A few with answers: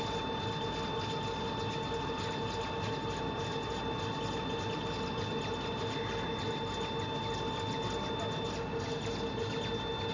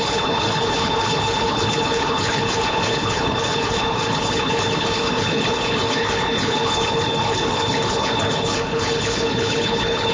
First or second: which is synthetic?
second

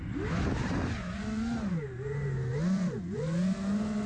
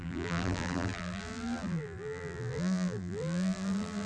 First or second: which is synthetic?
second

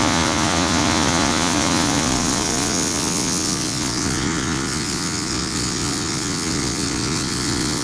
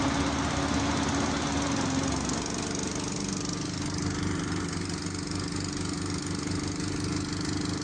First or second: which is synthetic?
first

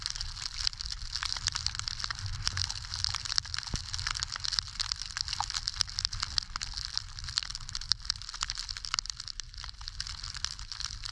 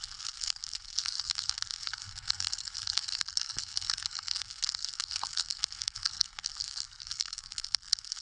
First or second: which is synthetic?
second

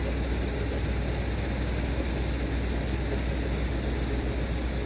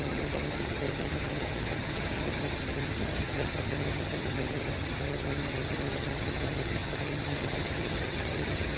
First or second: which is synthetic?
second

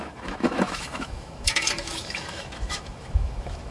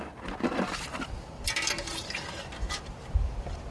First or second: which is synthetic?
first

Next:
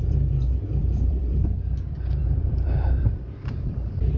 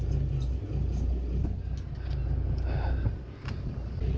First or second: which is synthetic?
first